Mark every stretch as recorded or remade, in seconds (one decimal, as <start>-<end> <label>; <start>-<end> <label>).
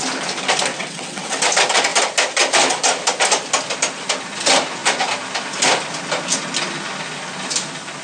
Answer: 0.0-0.7 recorded; 0.7-1.4 remade; 1.4-8.0 recorded